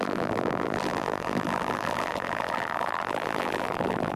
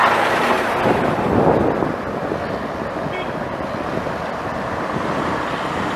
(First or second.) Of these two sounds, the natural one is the second